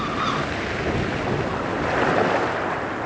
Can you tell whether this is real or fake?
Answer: real